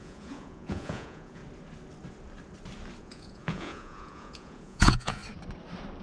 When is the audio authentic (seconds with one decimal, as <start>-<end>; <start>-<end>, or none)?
1.4-3.0; 5.2-6.0